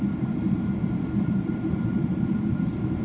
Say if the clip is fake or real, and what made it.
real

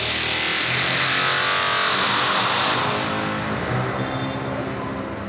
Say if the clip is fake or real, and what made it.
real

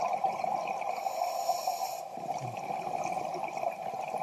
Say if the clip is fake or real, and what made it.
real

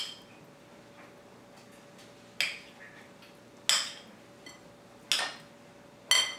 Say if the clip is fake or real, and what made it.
real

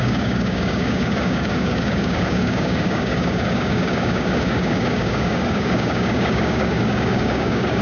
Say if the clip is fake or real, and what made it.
fake, codec, DAC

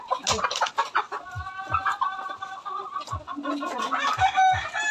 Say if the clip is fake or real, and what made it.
real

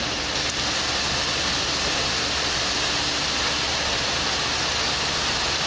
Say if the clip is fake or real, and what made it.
real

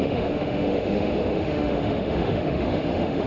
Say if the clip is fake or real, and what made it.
fake, autoencoder, DAC-VAE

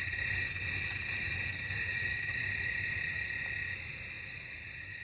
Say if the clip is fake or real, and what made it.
real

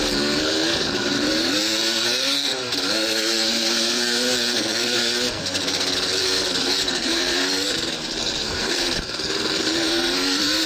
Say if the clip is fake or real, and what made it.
fake, codec, SNAC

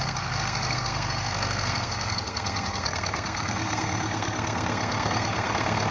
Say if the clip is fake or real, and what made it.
fake, codec, SNAC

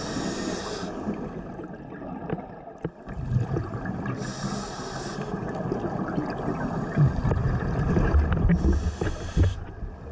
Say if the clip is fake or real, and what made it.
real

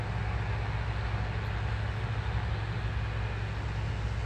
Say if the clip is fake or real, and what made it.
real